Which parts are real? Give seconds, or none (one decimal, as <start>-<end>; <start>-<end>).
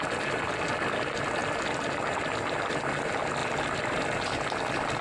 0.0-5.0